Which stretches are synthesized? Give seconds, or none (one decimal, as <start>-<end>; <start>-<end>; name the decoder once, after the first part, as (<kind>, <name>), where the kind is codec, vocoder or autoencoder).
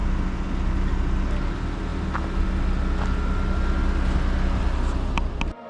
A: none